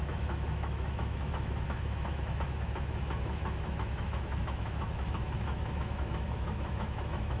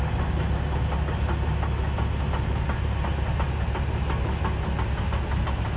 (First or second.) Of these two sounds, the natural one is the second